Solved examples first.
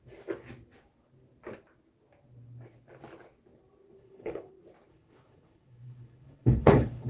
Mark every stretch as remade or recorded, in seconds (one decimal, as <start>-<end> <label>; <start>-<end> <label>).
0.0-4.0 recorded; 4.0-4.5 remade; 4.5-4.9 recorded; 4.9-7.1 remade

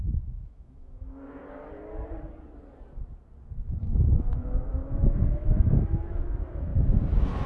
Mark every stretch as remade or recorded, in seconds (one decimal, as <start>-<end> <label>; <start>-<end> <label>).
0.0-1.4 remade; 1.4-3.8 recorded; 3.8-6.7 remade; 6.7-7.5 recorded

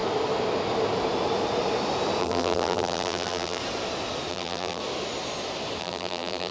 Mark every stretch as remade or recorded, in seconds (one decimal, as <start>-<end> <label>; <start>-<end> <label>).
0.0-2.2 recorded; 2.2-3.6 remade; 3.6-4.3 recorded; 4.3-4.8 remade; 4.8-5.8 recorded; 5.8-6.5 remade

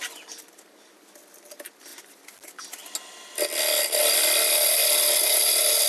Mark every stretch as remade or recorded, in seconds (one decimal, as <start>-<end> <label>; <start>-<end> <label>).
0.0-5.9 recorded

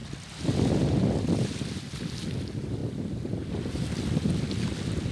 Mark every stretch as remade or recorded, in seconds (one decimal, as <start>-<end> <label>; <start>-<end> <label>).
0.0-5.1 recorded

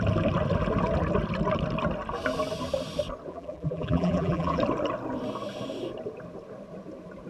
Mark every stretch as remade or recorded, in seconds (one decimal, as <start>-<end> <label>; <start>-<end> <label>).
0.0-3.3 recorded; 3.3-4.6 remade; 4.6-7.3 recorded

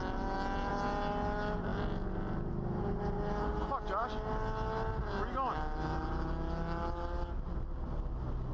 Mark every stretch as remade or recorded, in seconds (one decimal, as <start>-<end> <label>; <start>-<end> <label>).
0.0-8.5 recorded

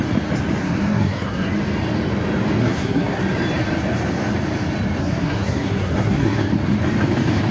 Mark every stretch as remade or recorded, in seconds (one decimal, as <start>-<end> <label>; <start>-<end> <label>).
0.0-0.6 recorded; 0.6-1.5 remade; 1.5-2.6 recorded; 2.6-3.2 remade; 3.2-5.0 recorded; 5.0-6.5 remade; 6.5-7.5 recorded